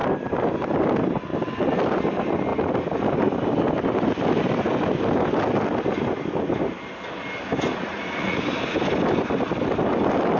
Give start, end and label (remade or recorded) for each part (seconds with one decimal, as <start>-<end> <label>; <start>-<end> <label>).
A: 0.0-7.7 recorded; 7.7-8.4 remade; 8.4-10.4 recorded